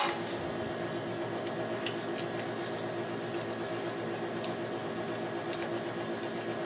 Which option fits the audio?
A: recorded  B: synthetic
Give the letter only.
A